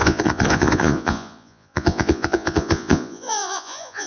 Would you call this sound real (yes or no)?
no